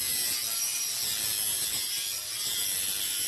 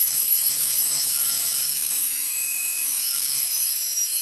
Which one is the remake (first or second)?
second